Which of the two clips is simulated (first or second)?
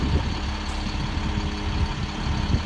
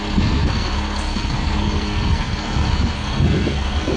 second